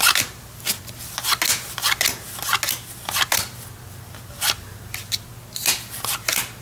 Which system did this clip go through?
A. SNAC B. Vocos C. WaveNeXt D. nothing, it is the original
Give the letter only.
D